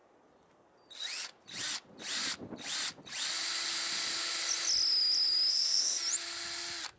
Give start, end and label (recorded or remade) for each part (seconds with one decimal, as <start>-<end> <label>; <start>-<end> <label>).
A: 0.0-5.5 recorded; 5.5-6.0 remade; 6.0-7.0 recorded